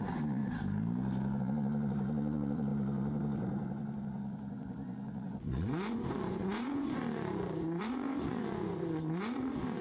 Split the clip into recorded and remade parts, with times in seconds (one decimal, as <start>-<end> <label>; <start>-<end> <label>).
0.0-0.4 remade; 0.4-1.4 recorded; 1.4-9.8 remade